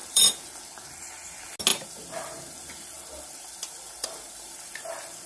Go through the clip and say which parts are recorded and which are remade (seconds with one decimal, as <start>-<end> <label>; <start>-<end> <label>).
0.0-0.6 remade; 0.6-1.7 recorded; 1.7-5.3 remade